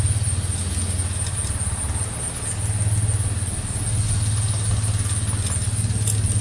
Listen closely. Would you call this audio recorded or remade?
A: recorded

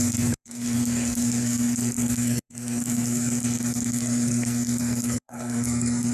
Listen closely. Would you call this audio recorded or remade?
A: remade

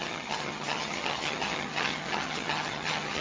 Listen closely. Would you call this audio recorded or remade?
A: remade